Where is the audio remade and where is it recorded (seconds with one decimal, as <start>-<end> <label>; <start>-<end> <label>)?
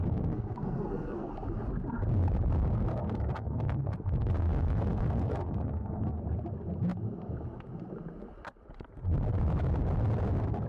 0.0-1.3 remade; 1.3-2.9 recorded; 2.9-6.2 remade; 6.2-10.7 recorded